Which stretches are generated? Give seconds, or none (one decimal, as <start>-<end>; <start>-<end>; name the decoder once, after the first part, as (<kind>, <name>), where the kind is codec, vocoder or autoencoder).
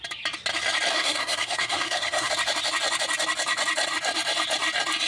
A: 0.9-2.3 (codec, SNAC)